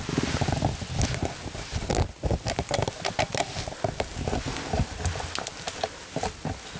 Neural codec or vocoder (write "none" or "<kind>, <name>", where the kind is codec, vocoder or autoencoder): none